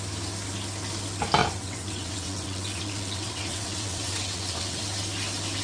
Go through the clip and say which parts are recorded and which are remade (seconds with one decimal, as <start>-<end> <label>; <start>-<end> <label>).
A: 0.0-1.4 recorded; 1.4-4.8 remade; 4.8-5.6 recorded